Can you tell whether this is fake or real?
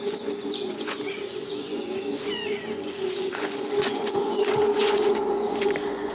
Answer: fake